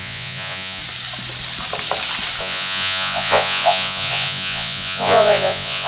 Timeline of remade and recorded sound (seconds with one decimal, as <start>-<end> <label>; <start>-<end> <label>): 0.0-0.8 remade; 0.8-2.4 recorded; 2.4-5.9 remade